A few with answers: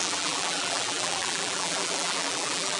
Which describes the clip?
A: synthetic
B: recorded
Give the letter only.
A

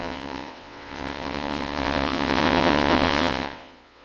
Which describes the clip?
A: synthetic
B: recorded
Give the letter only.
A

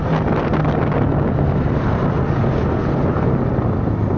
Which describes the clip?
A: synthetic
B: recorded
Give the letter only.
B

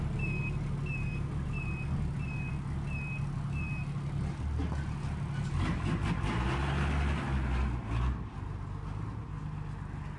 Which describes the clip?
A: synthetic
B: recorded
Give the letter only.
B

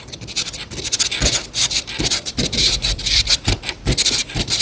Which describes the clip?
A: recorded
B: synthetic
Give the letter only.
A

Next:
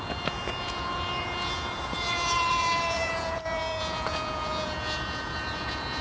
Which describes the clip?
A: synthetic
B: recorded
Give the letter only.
A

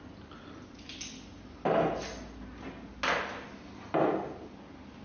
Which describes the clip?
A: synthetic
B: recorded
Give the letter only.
B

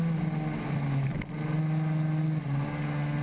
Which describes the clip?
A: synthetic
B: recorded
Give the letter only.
B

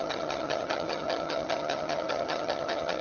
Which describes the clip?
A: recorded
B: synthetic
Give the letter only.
B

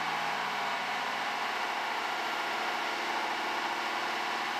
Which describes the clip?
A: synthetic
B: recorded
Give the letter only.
B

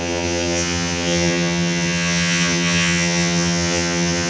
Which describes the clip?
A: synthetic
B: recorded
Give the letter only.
A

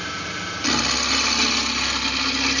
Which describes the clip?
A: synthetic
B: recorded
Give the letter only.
B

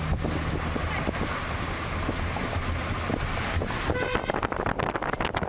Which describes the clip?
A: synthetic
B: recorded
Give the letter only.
B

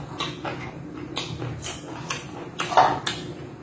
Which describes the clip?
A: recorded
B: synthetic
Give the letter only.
A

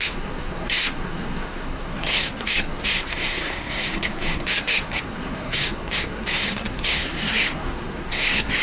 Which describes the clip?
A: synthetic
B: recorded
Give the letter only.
A